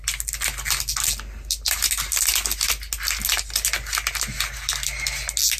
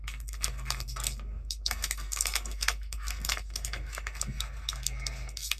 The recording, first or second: first